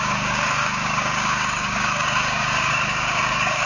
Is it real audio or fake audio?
fake